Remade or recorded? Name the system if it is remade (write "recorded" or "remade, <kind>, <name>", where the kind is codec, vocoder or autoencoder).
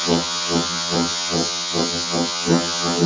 remade, vocoder, HiFi-GAN